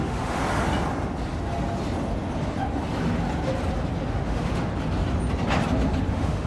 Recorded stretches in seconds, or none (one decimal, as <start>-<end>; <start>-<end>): 0.4-4.1; 4.7-6.1